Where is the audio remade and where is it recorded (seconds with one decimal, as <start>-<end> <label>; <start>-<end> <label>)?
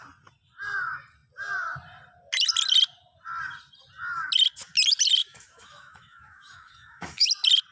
0.0-5.2 recorded; 5.2-7.3 remade; 7.3-7.7 recorded